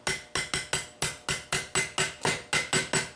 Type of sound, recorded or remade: recorded